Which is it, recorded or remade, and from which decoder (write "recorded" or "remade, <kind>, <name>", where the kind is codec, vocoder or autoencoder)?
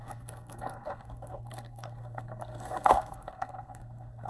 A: remade, codec, SNAC